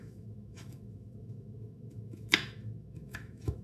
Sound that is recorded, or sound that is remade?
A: remade